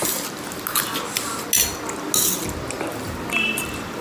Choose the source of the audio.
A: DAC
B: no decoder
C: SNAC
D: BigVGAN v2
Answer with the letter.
B